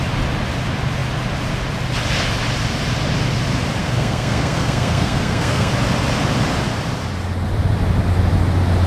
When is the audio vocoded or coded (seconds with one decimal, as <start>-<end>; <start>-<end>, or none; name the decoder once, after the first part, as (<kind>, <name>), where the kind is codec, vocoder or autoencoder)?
3.8-5.7 (codec, SNAC)